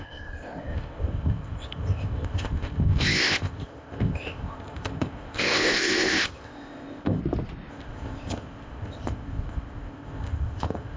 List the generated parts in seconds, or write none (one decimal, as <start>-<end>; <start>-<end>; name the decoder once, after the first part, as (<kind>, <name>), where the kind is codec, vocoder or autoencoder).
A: 0.0-7.2 (codec, ZipCodec); 7.7-11.0